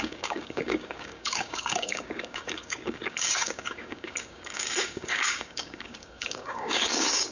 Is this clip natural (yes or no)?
no